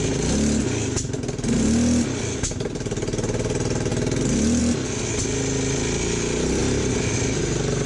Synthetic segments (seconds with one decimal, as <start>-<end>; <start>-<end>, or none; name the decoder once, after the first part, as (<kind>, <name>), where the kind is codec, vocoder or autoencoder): 6.6-7.4 (vocoder, BigVGAN v2)